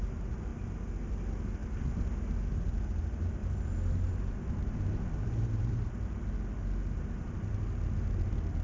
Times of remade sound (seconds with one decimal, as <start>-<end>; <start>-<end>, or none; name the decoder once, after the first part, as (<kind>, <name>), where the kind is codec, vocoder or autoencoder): 3.4-5.9 (vocoder, BigVGAN v2)

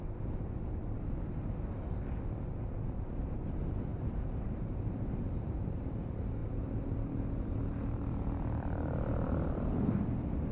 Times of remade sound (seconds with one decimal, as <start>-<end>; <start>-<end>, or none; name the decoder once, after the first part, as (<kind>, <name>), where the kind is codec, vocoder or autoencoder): 6.4-10.0 (vocoder, BigVGAN v2)